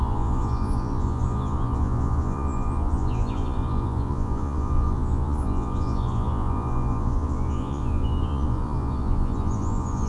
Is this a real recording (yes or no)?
no